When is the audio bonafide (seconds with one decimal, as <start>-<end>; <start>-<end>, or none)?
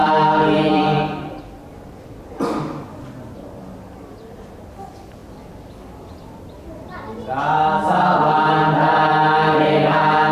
1.3-10.3